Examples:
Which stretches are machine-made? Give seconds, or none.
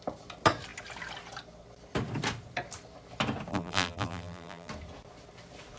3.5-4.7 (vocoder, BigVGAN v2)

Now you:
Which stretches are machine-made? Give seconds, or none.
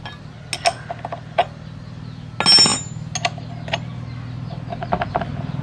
none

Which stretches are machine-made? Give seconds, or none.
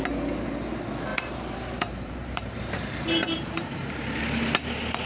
1.1-4.2 (vocoder, BigVGAN v2)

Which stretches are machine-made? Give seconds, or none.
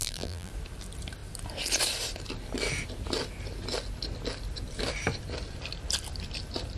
0.0-0.5 (vocoder, BigVGAN v2)